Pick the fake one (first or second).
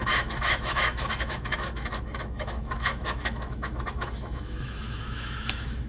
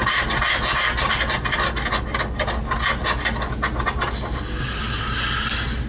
first